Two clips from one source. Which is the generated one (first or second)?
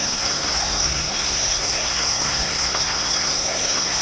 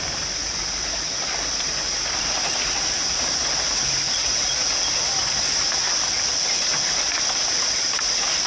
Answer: first